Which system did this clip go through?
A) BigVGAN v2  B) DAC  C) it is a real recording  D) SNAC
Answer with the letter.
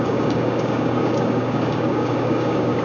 B